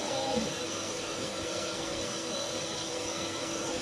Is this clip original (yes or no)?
no